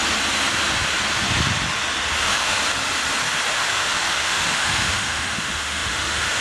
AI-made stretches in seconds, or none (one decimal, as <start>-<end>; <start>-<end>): 2.2-2.6; 3.5-6.4